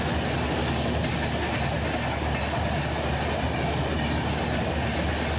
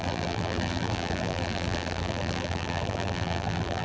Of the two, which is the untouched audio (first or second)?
first